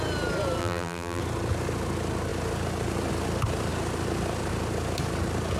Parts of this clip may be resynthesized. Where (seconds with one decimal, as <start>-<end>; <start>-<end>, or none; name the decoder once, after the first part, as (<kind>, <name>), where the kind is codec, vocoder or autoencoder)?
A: 0.6-1.2 (vocoder, BigVGAN v2)